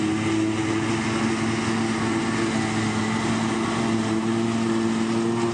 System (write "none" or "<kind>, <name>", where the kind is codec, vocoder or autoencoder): none